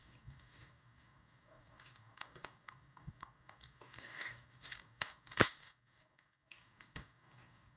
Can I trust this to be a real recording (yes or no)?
no